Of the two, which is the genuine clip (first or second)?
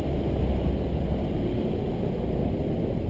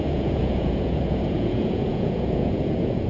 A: first